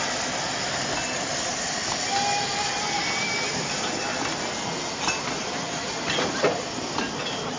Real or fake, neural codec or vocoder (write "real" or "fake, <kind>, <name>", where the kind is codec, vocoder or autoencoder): real